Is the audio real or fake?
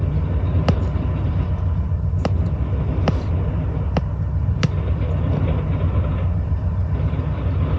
real